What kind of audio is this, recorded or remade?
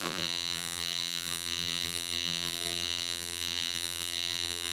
remade